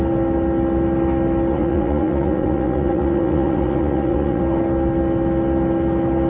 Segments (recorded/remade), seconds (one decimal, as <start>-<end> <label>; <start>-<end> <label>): 0.0-1.5 recorded; 1.5-4.4 remade; 4.4-6.3 recorded